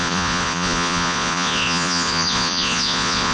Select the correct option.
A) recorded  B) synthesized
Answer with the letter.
B